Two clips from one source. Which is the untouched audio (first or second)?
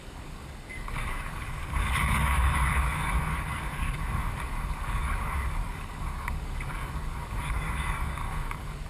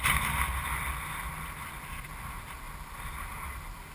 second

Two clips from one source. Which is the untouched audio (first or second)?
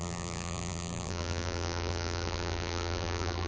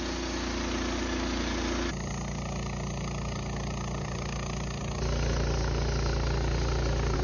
second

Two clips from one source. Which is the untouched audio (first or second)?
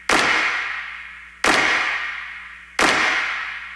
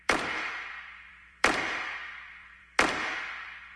first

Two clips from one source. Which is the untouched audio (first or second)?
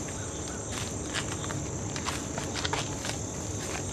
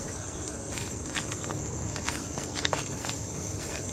first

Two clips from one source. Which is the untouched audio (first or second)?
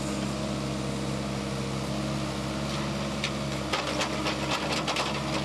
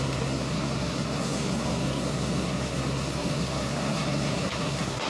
first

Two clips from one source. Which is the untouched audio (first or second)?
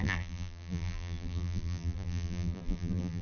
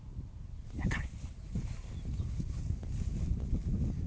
second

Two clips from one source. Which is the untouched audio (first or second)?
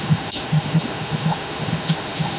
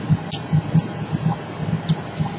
second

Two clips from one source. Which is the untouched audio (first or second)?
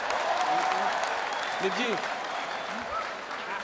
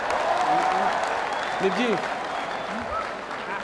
second